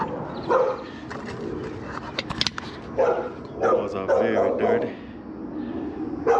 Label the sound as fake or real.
real